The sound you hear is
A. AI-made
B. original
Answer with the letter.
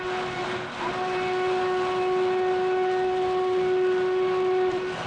B